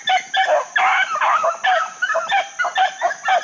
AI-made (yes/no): no